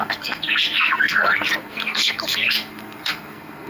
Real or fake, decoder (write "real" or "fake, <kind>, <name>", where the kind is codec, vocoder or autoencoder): fake, codec, SNAC